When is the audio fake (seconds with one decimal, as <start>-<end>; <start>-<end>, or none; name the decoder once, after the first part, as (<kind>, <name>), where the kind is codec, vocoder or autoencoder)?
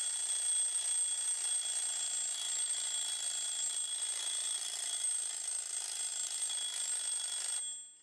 4.4-5.3 (vocoder, BigVGAN v2)